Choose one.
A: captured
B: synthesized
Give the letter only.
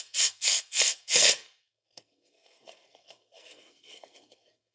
B